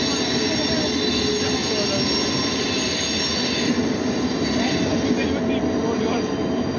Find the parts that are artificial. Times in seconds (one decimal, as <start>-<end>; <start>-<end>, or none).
none